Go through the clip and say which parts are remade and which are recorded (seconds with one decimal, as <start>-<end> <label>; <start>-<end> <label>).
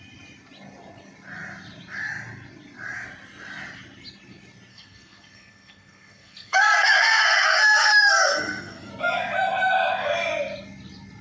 0.0-4.7 recorded; 4.7-8.9 remade; 8.9-11.2 recorded